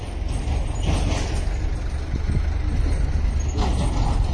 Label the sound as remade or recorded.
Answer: recorded